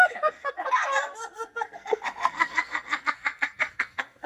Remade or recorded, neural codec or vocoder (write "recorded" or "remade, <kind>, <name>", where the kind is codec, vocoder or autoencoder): remade, codec, SNAC